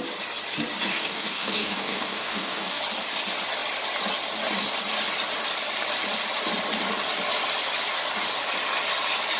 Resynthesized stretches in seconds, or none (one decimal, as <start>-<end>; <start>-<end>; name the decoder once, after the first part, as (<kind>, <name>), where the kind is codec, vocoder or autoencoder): 0.9-2.8 (codec, DAC)